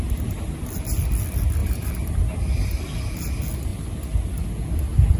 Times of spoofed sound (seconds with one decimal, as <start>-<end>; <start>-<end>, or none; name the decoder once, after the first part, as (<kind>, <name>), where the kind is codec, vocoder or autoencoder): 1.6-2.2 (vocoder, BigVGAN v2)